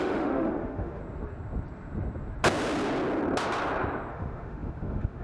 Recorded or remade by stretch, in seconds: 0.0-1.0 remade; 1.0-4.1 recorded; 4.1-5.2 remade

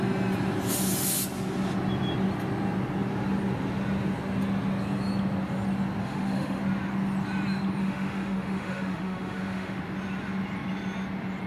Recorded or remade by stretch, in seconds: 0.0-6.0 recorded; 6.0-6.6 remade; 6.6-7.8 recorded; 7.8-9.8 remade; 9.8-11.5 recorded

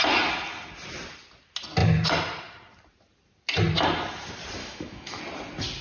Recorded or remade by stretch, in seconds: 0.0-4.6 recorded; 4.6-5.2 remade; 5.2-5.8 recorded

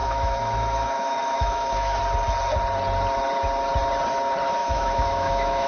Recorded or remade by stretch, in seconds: 0.0-2.0 remade; 2.0-4.6 recorded; 4.6-5.7 remade

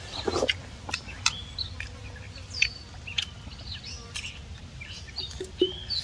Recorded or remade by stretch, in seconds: 0.0-6.0 recorded

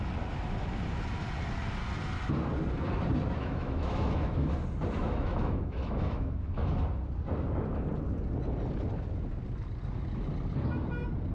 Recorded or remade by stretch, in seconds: 0.0-3.4 recorded; 3.4-4.5 remade; 4.5-5.0 recorded; 5.0-6.8 remade; 6.8-11.3 recorded

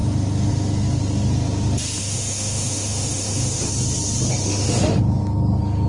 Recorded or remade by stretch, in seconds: 0.0-2.0 recorded; 2.0-3.6 remade; 3.6-4.4 recorded; 4.4-5.0 remade; 5.0-5.9 recorded